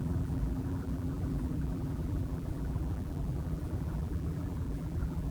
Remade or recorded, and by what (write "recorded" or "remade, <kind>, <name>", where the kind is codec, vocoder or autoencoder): remade, vocoder, BigVGAN v2